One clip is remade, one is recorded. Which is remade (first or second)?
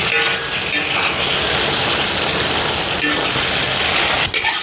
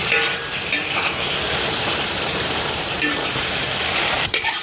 second